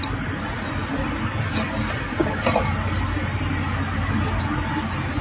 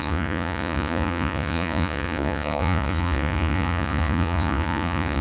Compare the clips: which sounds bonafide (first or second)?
first